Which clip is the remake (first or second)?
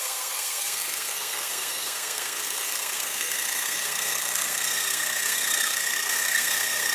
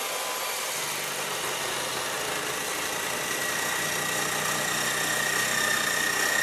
first